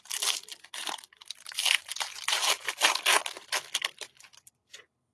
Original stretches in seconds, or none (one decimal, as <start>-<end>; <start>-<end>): 1.9-2.7